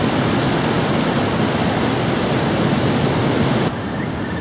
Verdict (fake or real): real